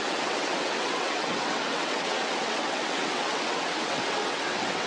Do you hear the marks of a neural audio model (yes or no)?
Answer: yes